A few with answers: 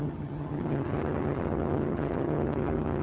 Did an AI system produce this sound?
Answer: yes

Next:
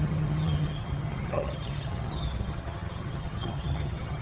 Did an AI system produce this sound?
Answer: yes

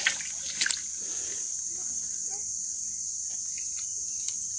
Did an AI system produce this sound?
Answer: no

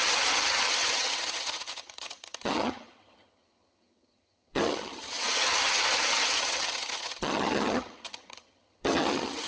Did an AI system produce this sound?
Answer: yes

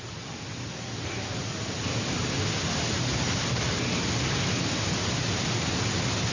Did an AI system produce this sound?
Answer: no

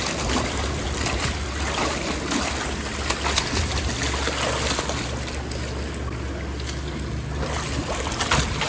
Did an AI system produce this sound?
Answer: no